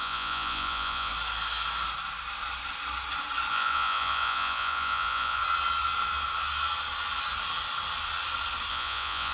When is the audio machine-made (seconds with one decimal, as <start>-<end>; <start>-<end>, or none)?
0.0-1.1; 3.5-5.4; 8.7-9.3